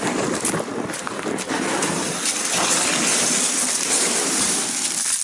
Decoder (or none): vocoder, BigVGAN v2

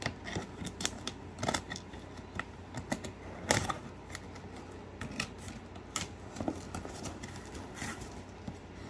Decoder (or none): none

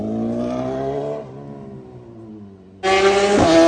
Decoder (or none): none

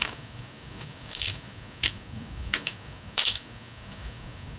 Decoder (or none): codec, DAC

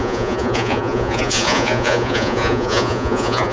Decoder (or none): vocoder, Vocos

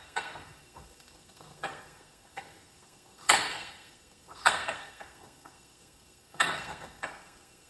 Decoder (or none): codec, SNAC